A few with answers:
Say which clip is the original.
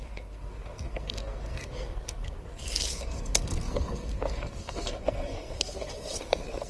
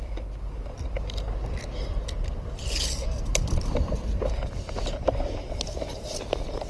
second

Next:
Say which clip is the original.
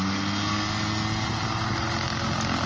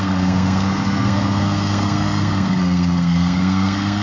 first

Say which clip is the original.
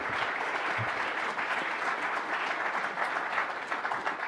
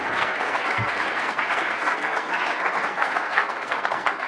first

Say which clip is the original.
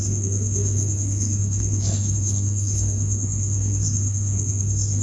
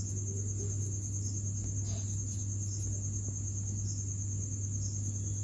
second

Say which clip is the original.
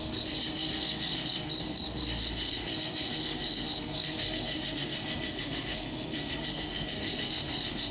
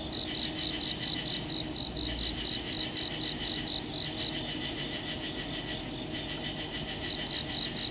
second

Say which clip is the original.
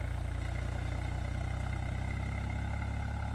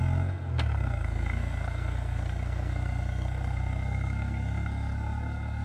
first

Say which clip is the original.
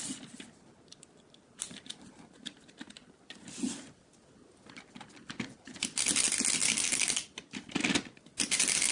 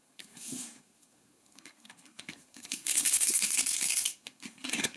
first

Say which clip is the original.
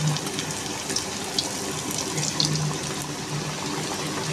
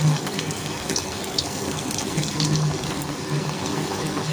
first